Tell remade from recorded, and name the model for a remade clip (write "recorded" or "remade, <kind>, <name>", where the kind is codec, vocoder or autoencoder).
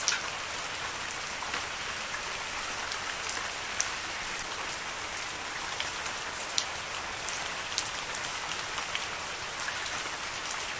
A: recorded